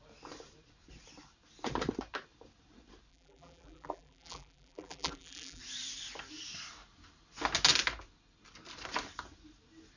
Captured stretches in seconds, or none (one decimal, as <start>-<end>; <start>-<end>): 0.0-3.1; 5.6-10.0